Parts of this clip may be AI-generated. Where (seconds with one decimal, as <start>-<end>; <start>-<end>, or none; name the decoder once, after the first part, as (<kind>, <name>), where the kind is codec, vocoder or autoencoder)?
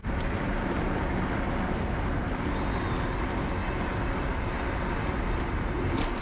0.0-1.1 (vocoder, BigVGAN v2)